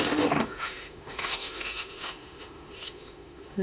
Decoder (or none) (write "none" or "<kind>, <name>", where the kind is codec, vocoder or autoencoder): autoencoder, DAC-VAE